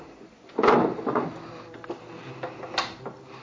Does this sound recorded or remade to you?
recorded